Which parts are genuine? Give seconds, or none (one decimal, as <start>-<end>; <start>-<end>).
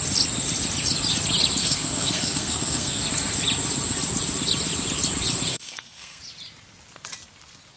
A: 0.0-1.6; 3.0-5.5; 6.2-7.8